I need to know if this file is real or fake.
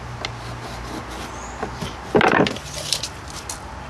real